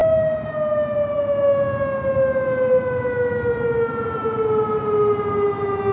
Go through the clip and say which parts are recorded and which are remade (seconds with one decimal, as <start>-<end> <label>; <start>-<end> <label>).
0.0-5.9 recorded

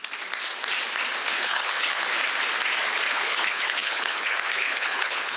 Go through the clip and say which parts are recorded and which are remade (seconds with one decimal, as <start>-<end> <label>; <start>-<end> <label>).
0.0-1.3 recorded; 1.3-2.0 remade; 2.0-3.1 recorded; 3.1-5.4 remade

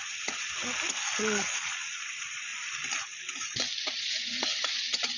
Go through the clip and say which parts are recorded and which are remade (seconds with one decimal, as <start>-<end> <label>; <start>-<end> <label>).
0.0-0.6 remade; 0.6-1.2 recorded; 1.2-2.5 remade; 2.5-3.8 recorded; 3.8-5.2 remade